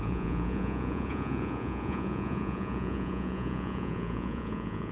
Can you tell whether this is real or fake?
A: fake